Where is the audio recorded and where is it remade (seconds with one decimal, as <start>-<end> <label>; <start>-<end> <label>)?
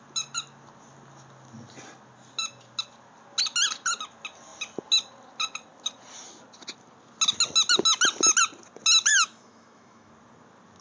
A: 0.0-9.1 recorded; 9.1-10.1 remade; 10.1-10.8 recorded